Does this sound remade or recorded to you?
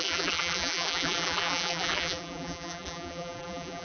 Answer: remade